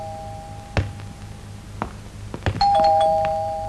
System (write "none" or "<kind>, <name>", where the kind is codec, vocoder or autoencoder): none